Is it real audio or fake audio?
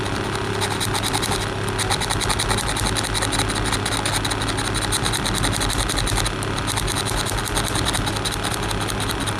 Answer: real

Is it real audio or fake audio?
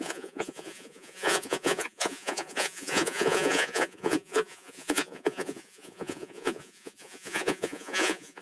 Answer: fake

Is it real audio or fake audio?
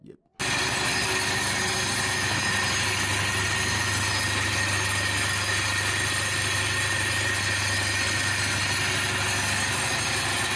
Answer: real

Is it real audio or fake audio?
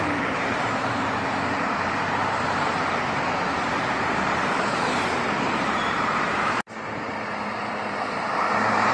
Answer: fake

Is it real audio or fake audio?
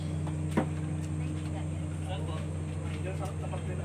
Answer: real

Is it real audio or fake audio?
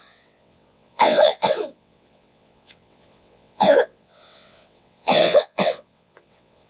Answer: fake